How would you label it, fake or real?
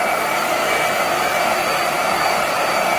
real